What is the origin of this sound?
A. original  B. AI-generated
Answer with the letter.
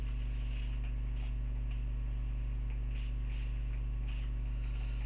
A